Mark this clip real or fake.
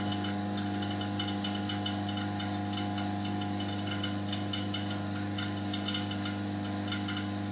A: real